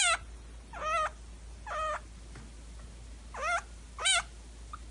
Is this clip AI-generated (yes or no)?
no